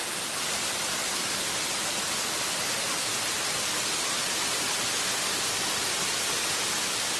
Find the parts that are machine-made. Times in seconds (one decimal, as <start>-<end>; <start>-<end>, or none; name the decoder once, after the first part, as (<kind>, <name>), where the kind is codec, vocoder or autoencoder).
none